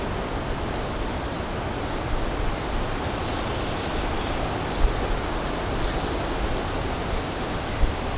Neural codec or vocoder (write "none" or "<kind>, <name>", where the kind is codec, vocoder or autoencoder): none